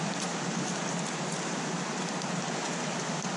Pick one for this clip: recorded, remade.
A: recorded